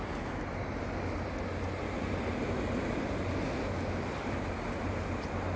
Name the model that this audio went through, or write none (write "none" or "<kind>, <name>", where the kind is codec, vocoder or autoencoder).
none